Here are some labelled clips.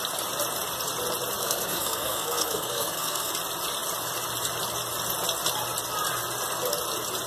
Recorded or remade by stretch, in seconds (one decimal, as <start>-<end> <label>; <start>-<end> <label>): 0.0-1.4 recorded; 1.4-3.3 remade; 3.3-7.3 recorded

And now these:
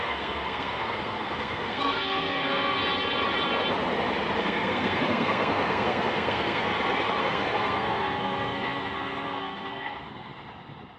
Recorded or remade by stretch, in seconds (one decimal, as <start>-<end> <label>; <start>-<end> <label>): 0.0-2.8 remade; 2.8-4.4 recorded; 4.4-6.7 remade; 6.7-7.2 recorded; 7.2-10.3 remade; 10.3-11.0 recorded

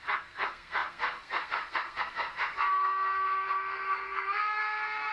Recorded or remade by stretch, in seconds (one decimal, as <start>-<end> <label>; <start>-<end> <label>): 0.0-5.1 remade